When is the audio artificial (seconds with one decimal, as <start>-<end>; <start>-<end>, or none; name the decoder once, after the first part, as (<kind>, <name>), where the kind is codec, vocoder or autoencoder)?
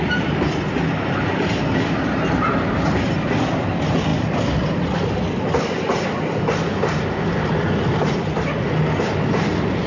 none